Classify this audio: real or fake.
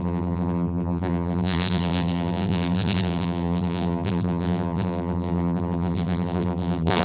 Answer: fake